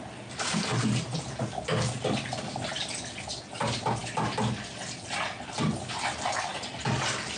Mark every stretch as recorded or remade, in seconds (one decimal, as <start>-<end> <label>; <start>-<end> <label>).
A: 0.0-7.4 recorded